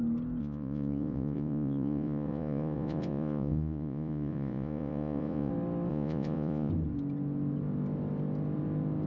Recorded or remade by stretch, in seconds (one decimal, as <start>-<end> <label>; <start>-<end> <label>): 0.0-0.4 recorded; 0.4-5.5 remade; 5.5-5.9 recorded; 5.9-6.7 remade; 6.7-9.1 recorded